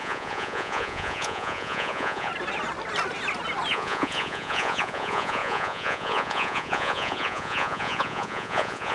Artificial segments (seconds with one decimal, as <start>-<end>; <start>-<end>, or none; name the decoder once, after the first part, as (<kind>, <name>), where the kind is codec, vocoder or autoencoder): 0.0-2.3 (vocoder, Vocos); 3.7-8.9